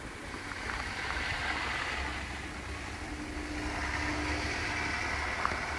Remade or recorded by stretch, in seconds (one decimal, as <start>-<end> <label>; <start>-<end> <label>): 0.0-5.8 recorded